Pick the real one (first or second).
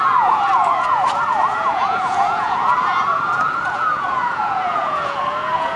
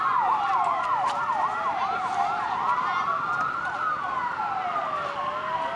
second